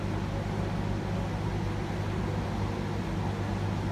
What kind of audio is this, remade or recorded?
recorded